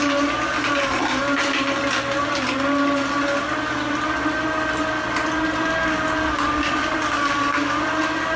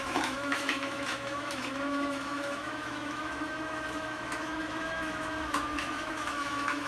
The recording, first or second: first